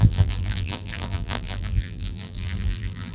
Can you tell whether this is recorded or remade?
remade